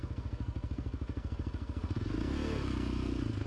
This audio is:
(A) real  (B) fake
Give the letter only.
B